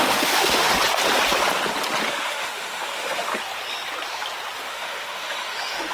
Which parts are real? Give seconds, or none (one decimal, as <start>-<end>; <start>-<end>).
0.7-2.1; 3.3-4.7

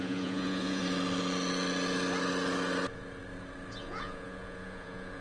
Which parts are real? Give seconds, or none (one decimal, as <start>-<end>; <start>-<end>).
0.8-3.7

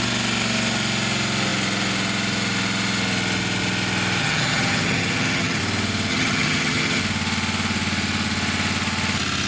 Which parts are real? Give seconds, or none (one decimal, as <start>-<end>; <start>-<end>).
0.0-4.2; 5.6-6.1; 7.0-9.5

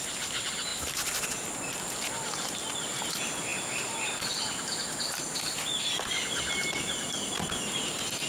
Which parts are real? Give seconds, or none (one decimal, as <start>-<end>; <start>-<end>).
0.0-8.3